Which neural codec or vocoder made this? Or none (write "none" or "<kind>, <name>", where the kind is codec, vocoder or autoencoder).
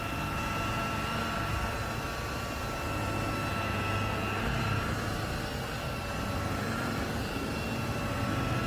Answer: none